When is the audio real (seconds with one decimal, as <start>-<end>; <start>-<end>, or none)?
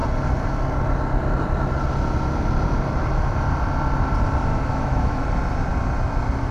0.0-4.5; 5.2-6.5